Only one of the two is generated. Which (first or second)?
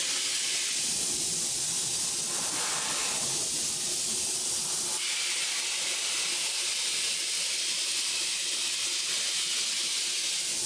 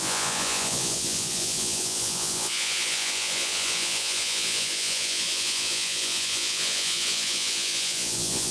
second